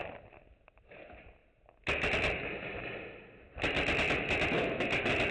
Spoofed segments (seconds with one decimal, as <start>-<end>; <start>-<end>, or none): none